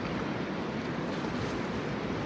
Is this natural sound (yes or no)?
yes